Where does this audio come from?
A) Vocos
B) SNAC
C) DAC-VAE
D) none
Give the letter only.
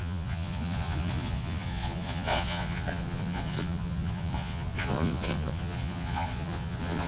A